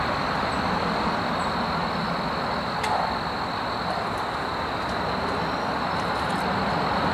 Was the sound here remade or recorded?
recorded